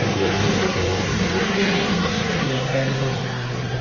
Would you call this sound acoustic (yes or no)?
no